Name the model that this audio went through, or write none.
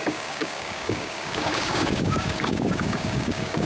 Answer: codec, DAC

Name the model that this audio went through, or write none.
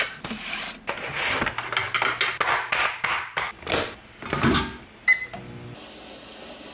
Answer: none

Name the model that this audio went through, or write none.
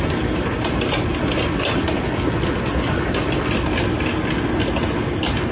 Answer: none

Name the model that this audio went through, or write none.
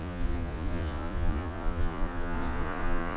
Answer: vocoder, Vocos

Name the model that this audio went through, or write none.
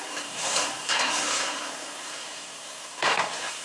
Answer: codec, SNAC